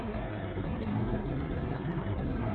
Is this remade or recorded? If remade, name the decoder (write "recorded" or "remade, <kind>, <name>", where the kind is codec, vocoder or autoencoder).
remade, codec, SNAC